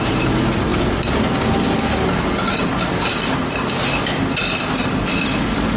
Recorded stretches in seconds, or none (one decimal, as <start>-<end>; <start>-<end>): 0.0-5.8